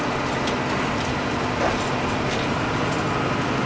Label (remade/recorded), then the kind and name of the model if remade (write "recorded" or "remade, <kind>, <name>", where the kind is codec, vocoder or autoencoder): recorded